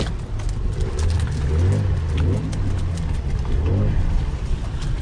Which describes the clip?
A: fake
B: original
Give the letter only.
B